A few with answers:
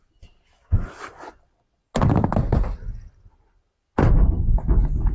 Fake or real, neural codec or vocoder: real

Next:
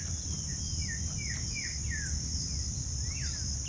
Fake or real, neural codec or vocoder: real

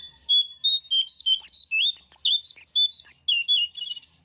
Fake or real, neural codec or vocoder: real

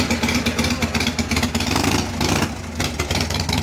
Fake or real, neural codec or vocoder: real